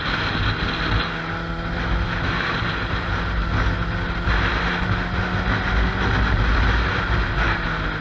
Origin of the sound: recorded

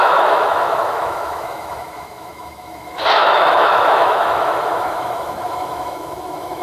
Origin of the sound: remade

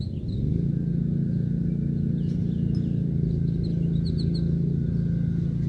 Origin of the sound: recorded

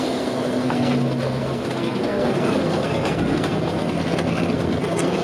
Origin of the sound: remade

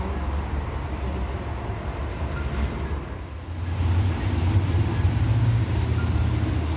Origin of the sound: recorded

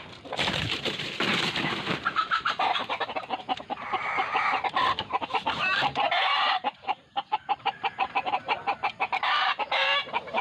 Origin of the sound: remade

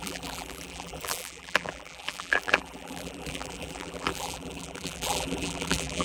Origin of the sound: remade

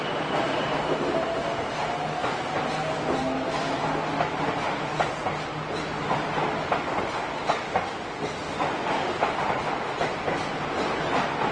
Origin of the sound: recorded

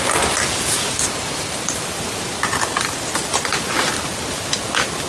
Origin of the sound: recorded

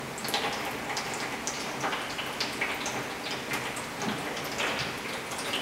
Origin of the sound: recorded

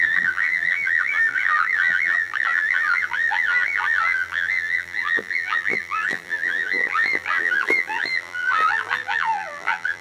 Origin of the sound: remade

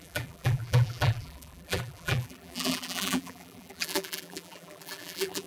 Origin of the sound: remade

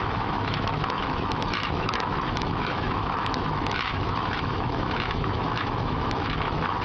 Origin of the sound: remade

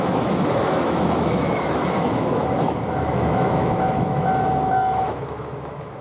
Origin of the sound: remade